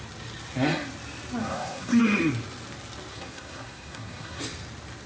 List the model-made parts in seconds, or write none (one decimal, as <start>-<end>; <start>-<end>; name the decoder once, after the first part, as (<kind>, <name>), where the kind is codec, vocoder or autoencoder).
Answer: 1.4-2.0 (codec, SNAC); 3.1-4.4